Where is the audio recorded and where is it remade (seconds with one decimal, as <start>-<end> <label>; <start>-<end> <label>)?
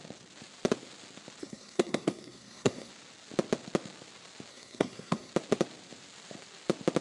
0.0-1.4 recorded; 1.4-2.9 remade; 2.9-4.5 recorded; 4.5-5.3 remade; 5.3-7.0 recorded